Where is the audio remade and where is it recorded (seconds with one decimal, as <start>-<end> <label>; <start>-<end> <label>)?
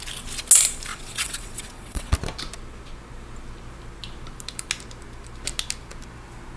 0.0-0.9 recorded; 0.9-2.1 remade; 2.1-6.6 recorded